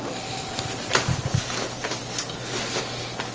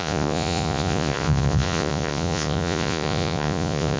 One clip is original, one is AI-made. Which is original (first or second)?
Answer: first